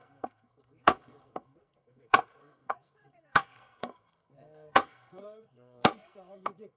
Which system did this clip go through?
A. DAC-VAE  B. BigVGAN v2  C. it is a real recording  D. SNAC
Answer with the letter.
D